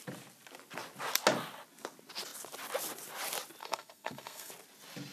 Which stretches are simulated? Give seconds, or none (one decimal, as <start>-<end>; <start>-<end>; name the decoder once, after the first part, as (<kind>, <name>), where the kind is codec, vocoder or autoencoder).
3.6-4.5 (codec, SNAC)